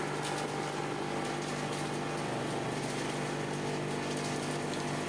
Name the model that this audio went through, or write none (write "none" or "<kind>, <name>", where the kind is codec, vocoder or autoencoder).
none